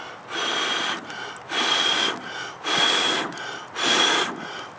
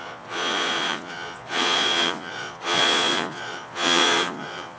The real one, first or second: first